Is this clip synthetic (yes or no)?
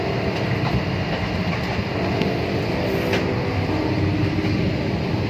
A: no